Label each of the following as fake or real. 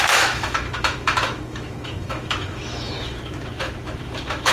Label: fake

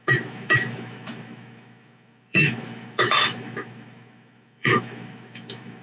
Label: fake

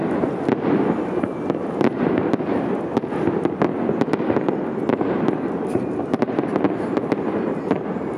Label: real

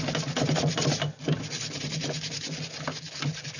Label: real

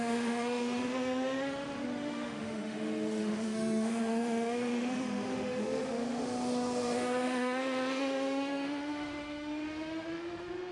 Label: fake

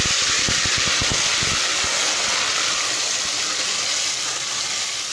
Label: real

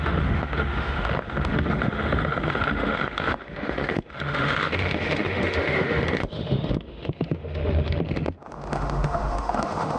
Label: fake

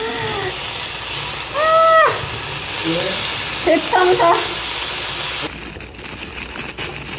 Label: real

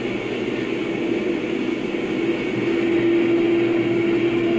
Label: real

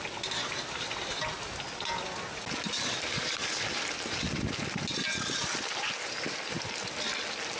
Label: real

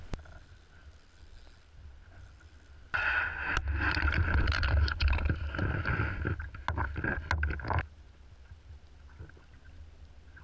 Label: real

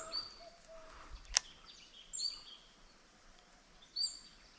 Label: real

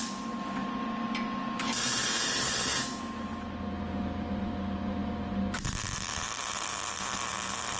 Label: real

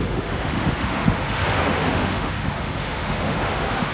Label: fake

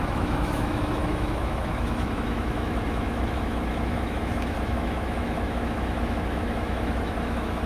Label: fake